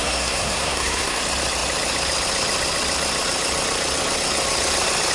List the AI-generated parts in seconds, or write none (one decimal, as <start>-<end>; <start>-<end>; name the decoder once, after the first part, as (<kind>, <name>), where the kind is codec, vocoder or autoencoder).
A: 0.0-1.2 (codec, SNAC)